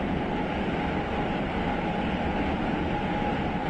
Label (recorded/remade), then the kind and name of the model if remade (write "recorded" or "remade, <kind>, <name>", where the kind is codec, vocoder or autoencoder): recorded